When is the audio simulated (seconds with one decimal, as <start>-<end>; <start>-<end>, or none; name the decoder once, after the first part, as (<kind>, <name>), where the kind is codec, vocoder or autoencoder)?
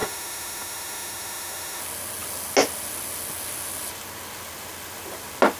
0.0-1.8 (autoencoder, DAC-VAE)